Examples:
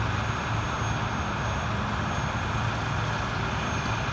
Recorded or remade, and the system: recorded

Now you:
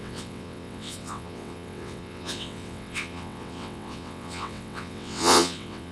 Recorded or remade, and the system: remade, vocoder, WaveNeXt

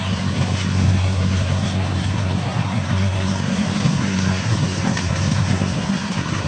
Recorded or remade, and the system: remade, codec, SNAC